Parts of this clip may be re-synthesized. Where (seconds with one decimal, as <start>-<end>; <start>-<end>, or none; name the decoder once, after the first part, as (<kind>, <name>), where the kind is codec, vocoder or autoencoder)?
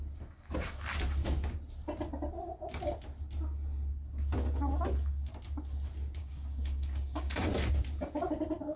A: 6.2-7.5 (codec, DAC)